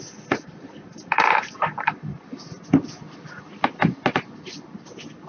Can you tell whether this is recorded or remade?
recorded